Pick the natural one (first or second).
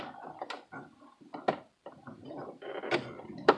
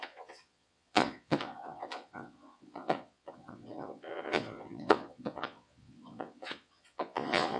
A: first